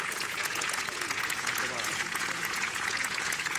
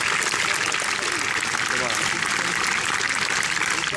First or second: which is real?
second